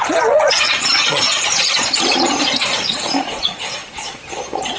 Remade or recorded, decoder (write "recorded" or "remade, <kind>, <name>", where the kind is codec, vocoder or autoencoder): remade, vocoder, Vocos